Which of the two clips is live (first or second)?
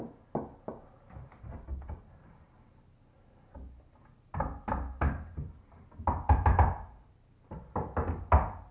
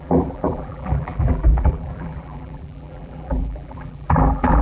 first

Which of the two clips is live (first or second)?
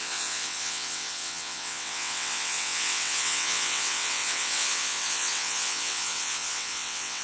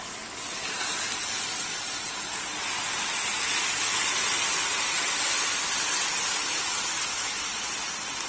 second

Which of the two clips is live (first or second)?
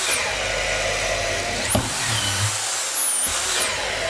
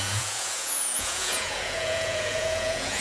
first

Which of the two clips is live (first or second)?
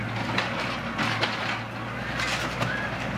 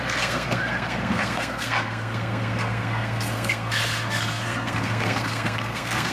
first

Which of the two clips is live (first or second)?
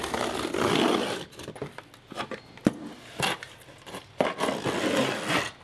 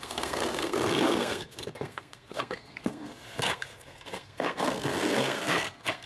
first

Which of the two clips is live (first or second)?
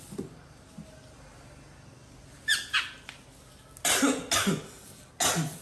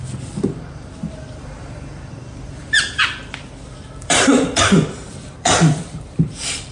first